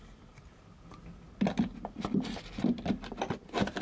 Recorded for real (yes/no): yes